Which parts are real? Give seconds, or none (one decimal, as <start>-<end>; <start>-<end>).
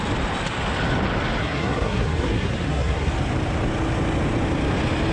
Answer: 0.0-1.4; 3.1-5.1